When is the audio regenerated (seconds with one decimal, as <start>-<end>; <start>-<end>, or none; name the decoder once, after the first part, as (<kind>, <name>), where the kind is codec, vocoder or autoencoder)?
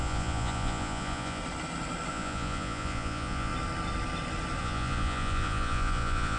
0.0-1.4 (vocoder, Vocos); 2.1-3.5; 4.6-6.4